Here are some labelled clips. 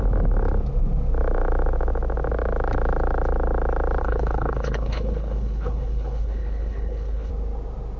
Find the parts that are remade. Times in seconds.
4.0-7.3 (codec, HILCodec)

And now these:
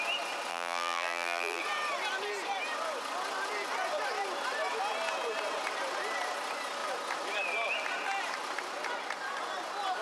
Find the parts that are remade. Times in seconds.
0.5-1.6 (vocoder, BigVGAN v2)

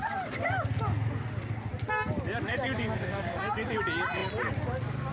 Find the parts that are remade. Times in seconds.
2.5-3.8 (codec, DAC)

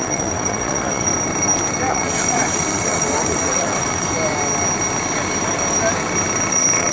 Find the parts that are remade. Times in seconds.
0.0-1.1 (vocoder, WaveNeXt); 1.9-4.1; 6.5-6.9

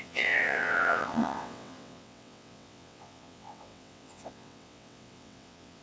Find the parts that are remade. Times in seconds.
0.0-5.8 (vocoder, WaveNeXt)

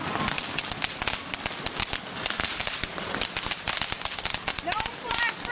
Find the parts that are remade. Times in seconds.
2.4-3.1 (vocoder, BigVGAN v2)

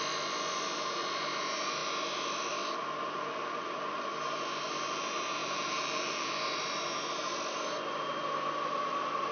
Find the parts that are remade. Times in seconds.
5.4-6.4 (vocoder, BigVGAN v2)